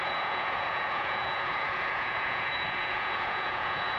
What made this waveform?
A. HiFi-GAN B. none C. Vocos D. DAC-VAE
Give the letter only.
C